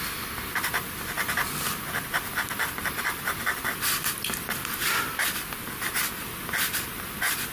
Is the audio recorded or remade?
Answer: recorded